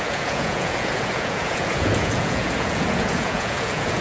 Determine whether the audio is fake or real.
fake